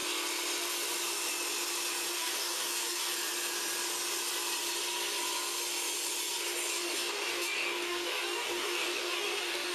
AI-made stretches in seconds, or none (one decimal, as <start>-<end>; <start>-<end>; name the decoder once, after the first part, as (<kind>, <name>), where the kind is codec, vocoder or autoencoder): 2.1-3.1 (codec, DAC); 6.7-9.7